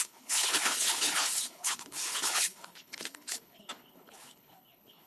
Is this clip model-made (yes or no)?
yes